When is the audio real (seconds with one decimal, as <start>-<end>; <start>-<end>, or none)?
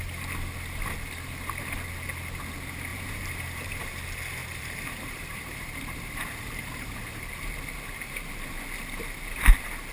0.0-2.9; 4.0-4.4; 6.9-9.9